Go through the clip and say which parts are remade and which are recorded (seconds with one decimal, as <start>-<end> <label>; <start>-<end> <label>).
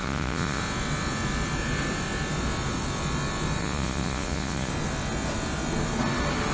0.0-0.6 remade; 0.6-3.6 recorded; 3.6-4.7 remade; 4.7-6.5 recorded